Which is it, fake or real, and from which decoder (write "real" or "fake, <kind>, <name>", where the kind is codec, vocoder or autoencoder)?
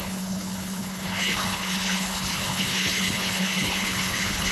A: fake, codec, HILCodec